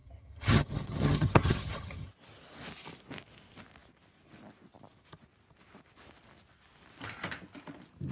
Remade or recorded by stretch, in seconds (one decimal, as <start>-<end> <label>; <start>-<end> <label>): 0.0-2.1 remade; 2.1-8.1 recorded